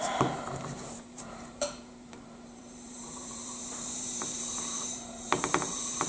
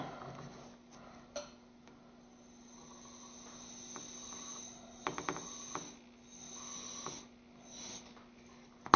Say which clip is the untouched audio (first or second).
second